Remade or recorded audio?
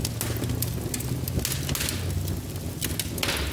recorded